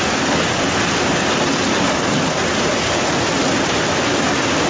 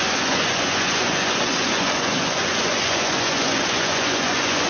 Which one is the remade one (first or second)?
second